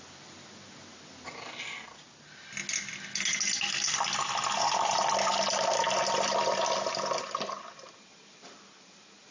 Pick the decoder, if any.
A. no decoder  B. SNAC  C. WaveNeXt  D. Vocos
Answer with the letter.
A